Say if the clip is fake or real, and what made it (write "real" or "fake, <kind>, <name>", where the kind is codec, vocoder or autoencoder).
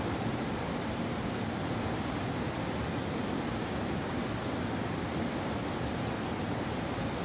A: real